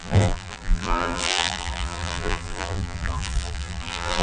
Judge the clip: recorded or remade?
remade